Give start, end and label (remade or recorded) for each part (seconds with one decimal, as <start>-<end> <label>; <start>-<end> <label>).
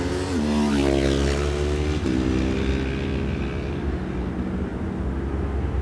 0.0-5.8 recorded